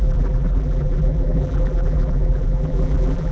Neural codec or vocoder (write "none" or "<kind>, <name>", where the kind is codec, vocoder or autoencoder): vocoder, BigVGAN v2